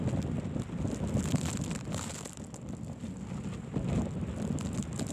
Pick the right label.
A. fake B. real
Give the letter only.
B